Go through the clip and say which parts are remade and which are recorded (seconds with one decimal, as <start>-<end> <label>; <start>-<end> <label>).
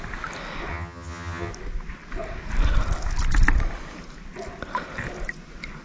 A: 0.0-0.7 recorded; 0.7-1.5 remade; 1.5-5.8 recorded